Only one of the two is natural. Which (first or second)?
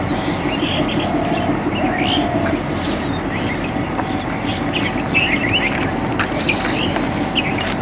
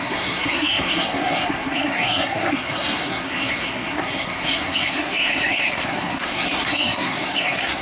first